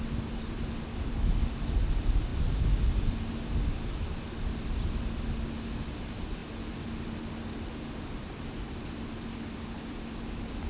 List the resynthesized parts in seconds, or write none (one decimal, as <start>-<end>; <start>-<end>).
none